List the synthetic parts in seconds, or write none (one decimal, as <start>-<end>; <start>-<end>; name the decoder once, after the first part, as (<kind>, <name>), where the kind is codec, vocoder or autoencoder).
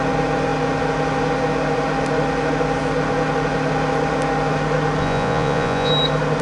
5.0-5.9 (vocoder, Vocos)